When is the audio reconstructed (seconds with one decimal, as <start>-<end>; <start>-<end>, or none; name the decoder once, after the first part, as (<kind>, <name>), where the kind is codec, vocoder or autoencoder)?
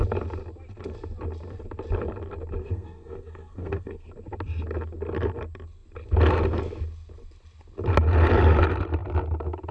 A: 2.6-4.1 (codec, SNAC)